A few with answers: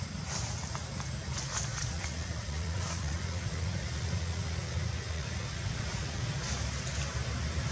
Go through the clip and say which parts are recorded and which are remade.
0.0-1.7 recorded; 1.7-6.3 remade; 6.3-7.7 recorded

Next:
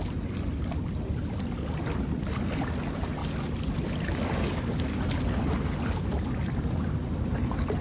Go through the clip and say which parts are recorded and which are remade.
0.0-7.8 recorded

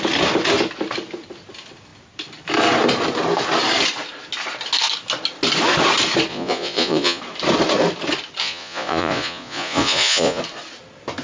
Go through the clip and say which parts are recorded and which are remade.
0.0-6.3 recorded; 6.3-7.2 remade; 7.2-8.4 recorded; 8.4-10.4 remade; 10.4-11.2 recorded

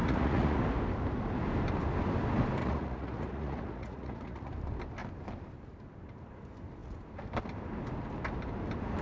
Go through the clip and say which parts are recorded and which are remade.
0.0-0.6 remade; 0.6-2.6 recorded; 2.6-4.5 remade; 4.5-9.0 recorded

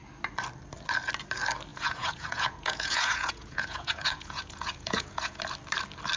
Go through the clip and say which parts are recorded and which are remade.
0.0-1.7 recorded; 1.7-5.4 remade; 5.4-6.2 recorded